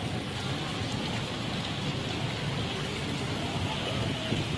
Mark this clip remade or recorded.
recorded